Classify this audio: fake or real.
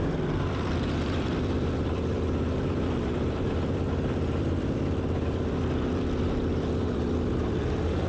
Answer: fake